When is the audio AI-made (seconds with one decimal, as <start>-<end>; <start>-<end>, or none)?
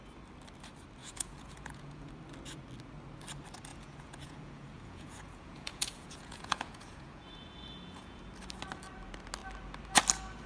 1.0-2.1; 3.7-8.2